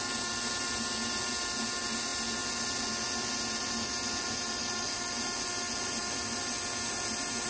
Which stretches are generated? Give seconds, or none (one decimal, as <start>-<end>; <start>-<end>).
none